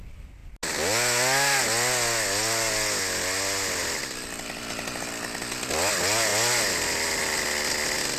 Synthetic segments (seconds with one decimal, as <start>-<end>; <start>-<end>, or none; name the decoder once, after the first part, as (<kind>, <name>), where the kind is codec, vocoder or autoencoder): none